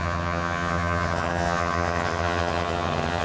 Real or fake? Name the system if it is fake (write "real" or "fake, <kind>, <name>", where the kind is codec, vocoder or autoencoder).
fake, vocoder, HiFi-GAN